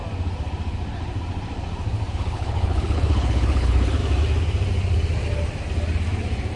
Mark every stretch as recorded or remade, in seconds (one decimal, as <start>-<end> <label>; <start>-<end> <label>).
0.0-2.1 recorded; 2.1-4.0 remade; 4.0-6.6 recorded